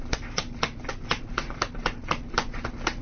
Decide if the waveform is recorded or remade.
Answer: recorded